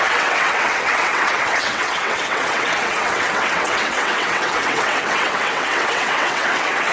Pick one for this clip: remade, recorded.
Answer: remade